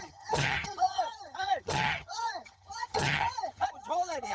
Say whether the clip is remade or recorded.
remade